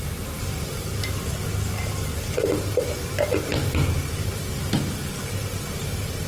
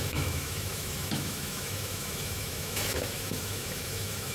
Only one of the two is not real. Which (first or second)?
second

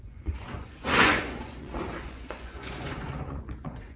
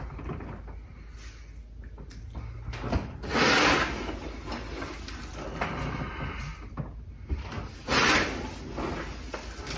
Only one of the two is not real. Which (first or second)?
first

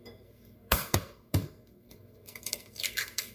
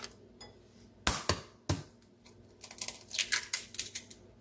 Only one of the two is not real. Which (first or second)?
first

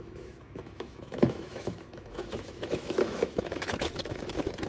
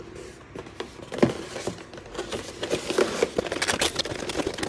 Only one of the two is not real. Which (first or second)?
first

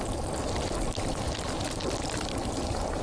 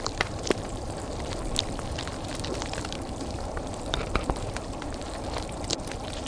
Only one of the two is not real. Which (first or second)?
second